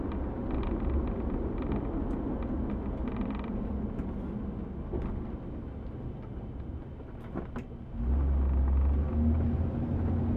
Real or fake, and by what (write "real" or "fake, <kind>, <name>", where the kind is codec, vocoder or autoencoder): real